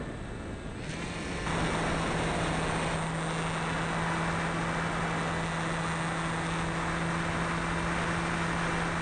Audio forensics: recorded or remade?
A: recorded